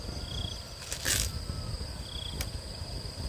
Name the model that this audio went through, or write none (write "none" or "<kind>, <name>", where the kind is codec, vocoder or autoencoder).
none